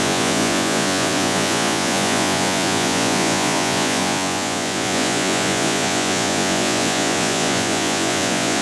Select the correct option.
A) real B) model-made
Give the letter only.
B